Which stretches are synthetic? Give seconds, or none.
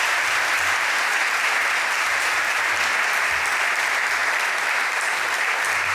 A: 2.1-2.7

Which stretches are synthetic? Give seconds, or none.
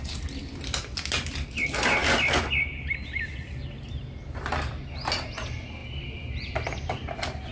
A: none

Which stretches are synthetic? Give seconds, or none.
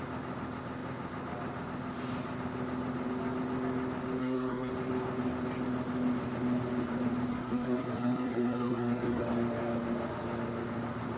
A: 4.2-4.7; 7.3-9.2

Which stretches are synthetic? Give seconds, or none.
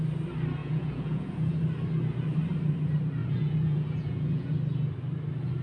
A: 0.6-1.5; 3.2-4.5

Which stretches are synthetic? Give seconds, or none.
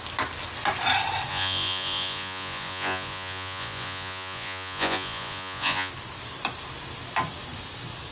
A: 1.3-5.9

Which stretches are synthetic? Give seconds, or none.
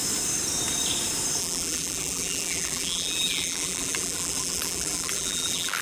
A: 1.4-5.8